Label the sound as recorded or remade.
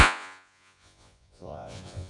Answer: remade